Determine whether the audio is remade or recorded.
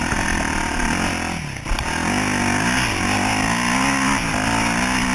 recorded